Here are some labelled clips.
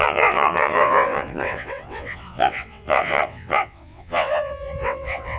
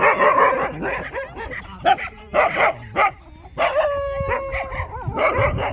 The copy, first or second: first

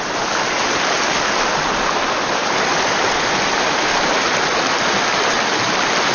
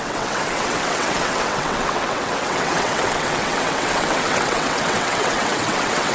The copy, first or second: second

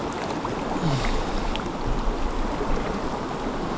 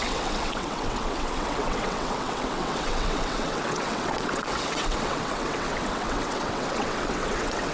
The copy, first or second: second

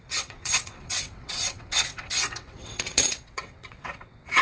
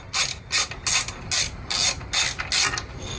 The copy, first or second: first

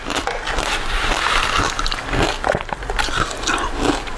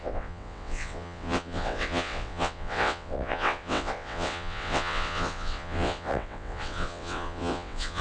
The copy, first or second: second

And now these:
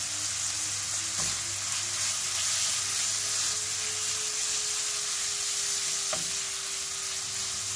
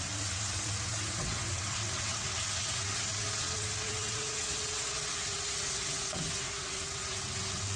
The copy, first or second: second